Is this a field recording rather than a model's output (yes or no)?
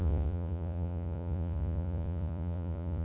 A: no